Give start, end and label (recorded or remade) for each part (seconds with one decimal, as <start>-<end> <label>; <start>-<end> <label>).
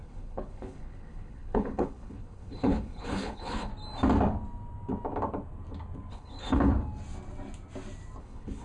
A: 0.0-3.7 remade; 3.7-6.1 recorded; 6.1-6.7 remade; 6.7-8.2 recorded; 8.2-8.6 remade